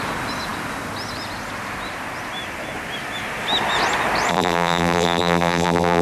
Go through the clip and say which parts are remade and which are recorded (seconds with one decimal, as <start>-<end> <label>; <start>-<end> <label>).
0.0-4.3 recorded; 4.3-6.0 remade